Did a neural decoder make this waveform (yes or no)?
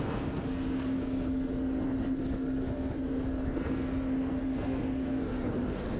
yes